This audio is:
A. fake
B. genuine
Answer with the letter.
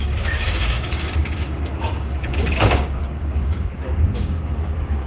A